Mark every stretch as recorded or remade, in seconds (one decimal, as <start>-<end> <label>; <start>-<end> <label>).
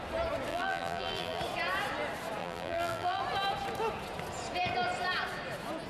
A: 0.0-0.5 recorded; 0.5-1.4 remade; 1.4-2.4 recorded; 2.4-3.2 remade; 3.2-5.9 recorded